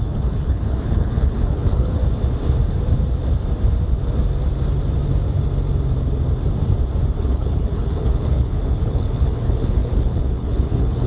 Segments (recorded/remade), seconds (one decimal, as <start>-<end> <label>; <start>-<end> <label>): 0.0-2.0 remade; 2.0-7.2 recorded; 7.2-11.1 remade